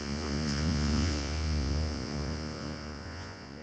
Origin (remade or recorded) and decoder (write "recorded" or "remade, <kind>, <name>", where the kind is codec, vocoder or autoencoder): remade, vocoder, Vocos